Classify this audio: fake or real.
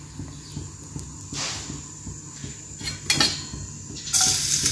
real